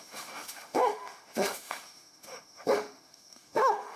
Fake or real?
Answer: fake